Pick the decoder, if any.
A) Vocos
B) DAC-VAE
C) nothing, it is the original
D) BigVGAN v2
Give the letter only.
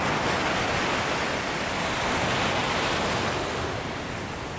C